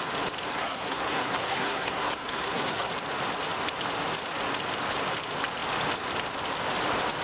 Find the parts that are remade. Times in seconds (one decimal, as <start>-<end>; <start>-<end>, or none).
0.5-2.9